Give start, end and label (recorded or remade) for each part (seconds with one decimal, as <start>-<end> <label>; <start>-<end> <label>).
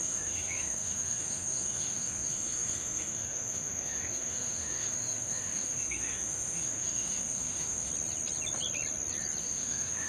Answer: 0.0-7.9 remade; 7.9-9.4 recorded; 9.4-10.1 remade